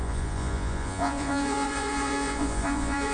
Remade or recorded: remade